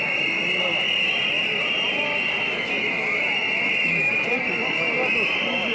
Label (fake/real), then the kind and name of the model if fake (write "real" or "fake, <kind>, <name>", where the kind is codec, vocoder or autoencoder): real